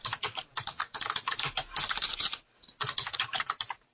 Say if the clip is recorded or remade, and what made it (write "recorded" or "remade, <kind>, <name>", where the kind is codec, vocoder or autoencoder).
remade, vocoder, BigVGAN v2